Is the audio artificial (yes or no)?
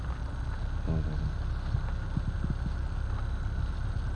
no